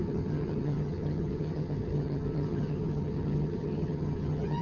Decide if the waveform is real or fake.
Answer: fake